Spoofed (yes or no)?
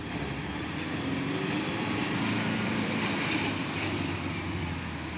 yes